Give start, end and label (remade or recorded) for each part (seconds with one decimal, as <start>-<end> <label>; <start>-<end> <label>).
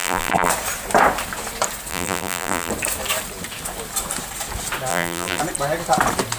0.0-0.5 remade; 0.5-1.9 recorded; 1.9-2.7 remade; 2.7-4.9 recorded; 4.9-5.4 remade; 5.4-6.4 recorded